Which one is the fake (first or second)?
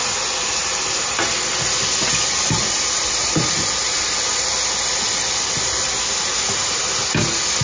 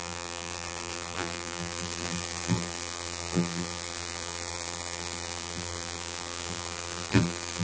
second